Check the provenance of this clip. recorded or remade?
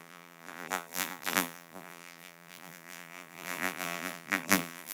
remade